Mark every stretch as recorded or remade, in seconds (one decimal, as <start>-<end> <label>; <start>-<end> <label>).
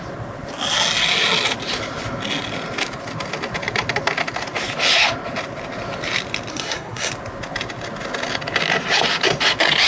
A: 0.0-6.5 recorded; 6.5-7.1 remade; 7.1-9.9 recorded